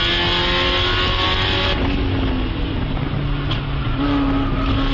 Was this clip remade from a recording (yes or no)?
no